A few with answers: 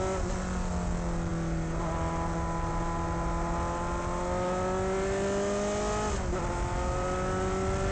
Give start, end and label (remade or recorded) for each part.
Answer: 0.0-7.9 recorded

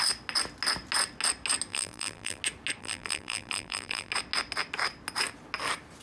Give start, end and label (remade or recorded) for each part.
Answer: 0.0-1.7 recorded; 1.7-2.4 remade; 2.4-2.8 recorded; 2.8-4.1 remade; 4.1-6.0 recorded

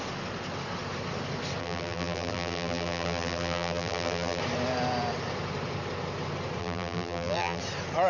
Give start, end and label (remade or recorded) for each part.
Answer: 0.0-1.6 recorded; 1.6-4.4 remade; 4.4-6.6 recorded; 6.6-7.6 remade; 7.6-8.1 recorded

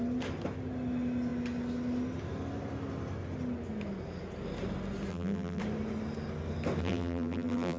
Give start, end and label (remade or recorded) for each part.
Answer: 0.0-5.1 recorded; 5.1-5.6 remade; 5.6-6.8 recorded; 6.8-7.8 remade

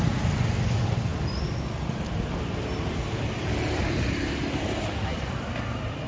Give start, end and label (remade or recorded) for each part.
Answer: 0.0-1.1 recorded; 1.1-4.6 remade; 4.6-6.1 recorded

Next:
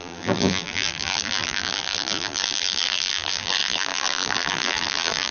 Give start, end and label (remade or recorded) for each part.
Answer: 0.0-5.3 remade

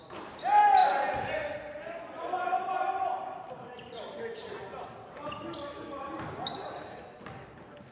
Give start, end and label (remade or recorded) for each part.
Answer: 0.0-7.9 recorded